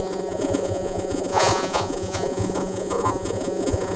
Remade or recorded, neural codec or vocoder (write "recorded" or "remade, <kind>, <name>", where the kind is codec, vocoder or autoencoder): remade, vocoder, Vocos